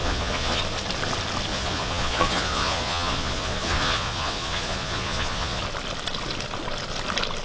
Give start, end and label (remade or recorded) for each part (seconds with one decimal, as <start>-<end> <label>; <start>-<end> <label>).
0.0-0.6 remade; 0.6-1.5 recorded; 1.5-5.6 remade; 5.6-7.4 recorded